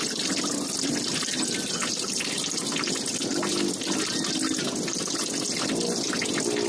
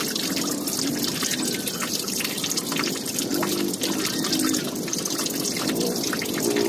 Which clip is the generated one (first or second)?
second